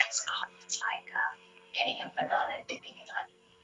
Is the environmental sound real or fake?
fake